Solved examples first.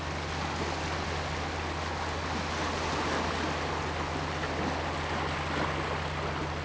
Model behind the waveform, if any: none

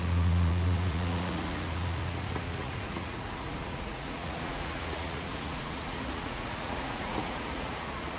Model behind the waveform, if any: vocoder, Vocos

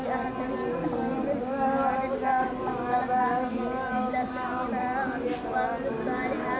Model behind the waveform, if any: none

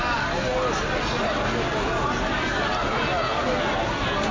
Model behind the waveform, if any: none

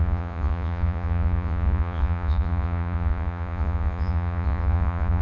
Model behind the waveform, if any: vocoder, Vocos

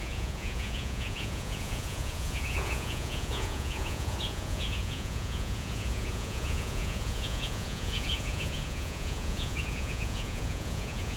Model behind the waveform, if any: vocoder, Vocos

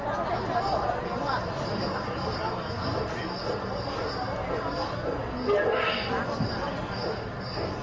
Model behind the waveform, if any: none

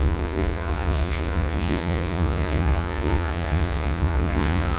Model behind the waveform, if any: vocoder, Vocos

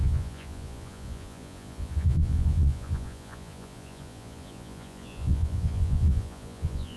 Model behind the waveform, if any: vocoder, Vocos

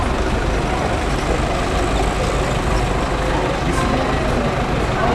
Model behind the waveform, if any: none